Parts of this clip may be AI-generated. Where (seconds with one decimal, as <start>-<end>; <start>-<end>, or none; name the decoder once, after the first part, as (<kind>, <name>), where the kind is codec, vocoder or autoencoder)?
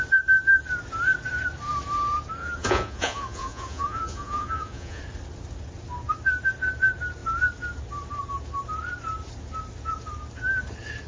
2.4-5.0 (vocoder, Vocos)